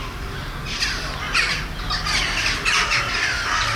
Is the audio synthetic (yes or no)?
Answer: no